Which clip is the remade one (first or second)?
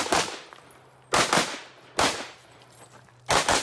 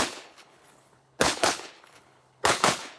second